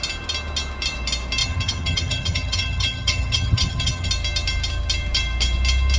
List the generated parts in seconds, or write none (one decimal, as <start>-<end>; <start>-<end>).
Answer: 1.4-4.1

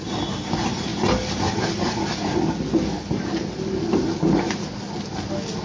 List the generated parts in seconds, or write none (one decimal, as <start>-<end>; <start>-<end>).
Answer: none

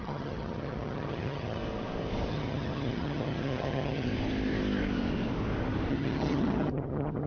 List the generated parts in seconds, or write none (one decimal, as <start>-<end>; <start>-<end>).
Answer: 0.0-1.6; 2.3-4.1; 5.9-7.3

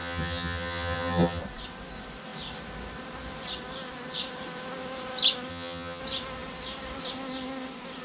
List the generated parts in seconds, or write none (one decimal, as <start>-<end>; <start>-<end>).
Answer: 0.0-1.4; 5.5-6.0

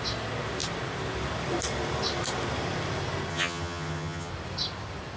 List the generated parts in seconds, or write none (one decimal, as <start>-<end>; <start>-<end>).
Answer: 3.3-4.3